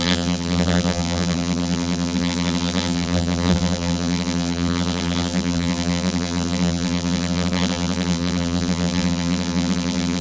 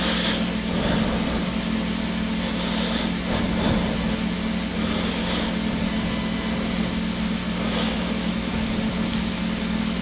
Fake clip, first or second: first